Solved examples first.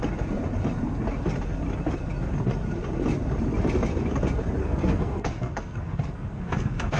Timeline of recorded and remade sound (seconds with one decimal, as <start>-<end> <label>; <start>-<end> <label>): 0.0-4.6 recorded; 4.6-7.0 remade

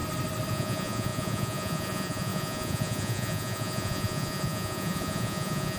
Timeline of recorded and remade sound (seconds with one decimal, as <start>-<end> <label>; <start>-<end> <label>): 0.0-0.5 recorded; 0.5-5.8 remade

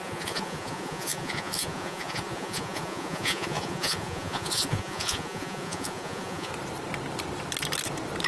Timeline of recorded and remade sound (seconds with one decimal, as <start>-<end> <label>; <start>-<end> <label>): 0.0-6.5 remade; 6.5-8.3 recorded

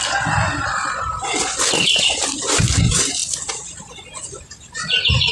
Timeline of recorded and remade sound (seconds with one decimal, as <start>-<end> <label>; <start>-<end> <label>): 0.0-5.3 recorded

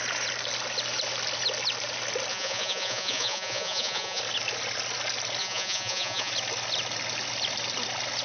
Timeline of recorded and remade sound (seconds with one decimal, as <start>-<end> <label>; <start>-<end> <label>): 0.0-2.3 recorded; 2.3-4.2 remade; 4.2-5.4 recorded; 5.4-6.3 remade; 6.3-8.2 recorded